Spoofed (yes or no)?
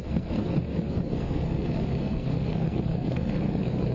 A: yes